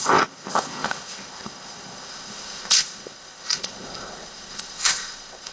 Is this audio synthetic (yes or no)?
yes